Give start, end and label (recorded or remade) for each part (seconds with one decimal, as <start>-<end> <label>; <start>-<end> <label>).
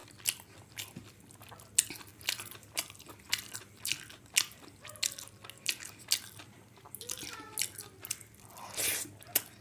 0.0-9.6 recorded